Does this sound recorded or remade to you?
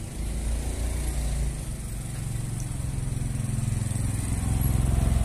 recorded